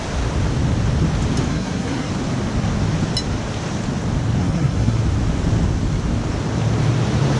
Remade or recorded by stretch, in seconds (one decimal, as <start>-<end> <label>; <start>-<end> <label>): 0.0-1.5 recorded; 1.5-2.1 remade; 2.1-4.4 recorded; 4.4-5.0 remade; 5.0-7.4 recorded